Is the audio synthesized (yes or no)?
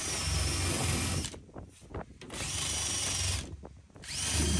no